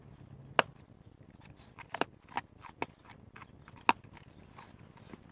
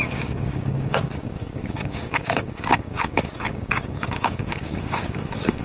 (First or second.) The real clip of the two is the first